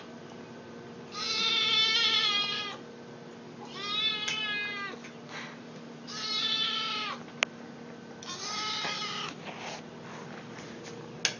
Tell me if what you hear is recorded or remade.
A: recorded